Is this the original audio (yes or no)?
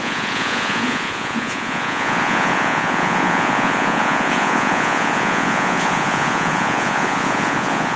no